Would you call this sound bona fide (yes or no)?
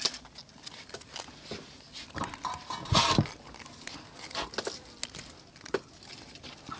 yes